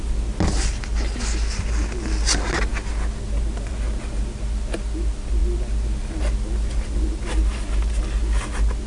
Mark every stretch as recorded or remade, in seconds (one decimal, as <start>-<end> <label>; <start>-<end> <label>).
0.0-8.9 recorded